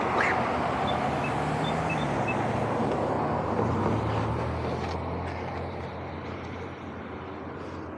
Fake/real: real